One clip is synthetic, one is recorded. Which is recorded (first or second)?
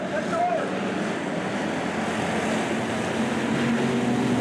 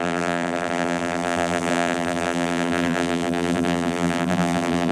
first